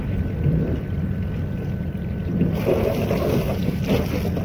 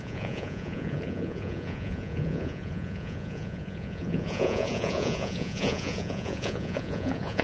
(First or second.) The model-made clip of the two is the second